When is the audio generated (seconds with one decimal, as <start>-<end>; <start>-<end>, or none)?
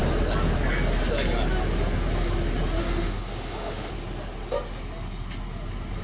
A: 2.8-3.9